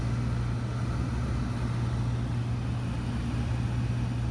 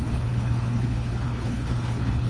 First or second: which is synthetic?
second